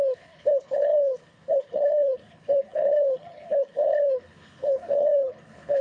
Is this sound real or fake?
fake